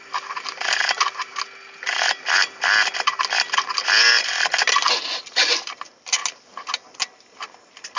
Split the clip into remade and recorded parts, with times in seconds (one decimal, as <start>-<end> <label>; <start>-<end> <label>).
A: 0.0-1.3 remade; 1.3-5.3 recorded; 5.3-6.2 remade; 6.2-7.6 recorded; 7.6-8.0 remade